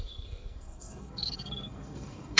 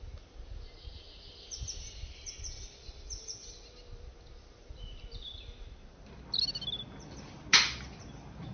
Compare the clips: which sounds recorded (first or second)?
second